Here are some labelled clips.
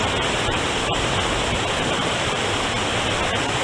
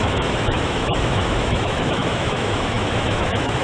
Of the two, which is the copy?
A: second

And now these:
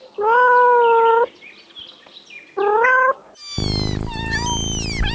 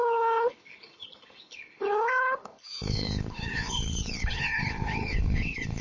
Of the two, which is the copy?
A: second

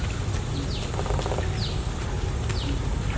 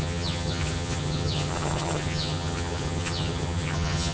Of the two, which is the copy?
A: second